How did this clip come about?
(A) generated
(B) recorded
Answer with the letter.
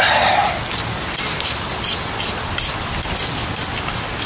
B